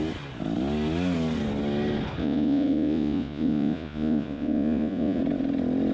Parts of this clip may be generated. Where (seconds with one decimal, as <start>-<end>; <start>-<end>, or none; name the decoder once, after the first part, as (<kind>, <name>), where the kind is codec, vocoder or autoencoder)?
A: 2.2-5.2 (vocoder, Vocos)